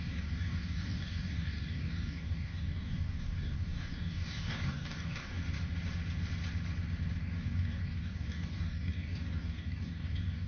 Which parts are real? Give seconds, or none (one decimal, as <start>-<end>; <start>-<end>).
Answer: 5.4-7.2